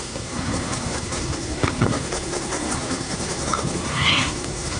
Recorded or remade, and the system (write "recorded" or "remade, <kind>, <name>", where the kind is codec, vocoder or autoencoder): remade, codec, SNAC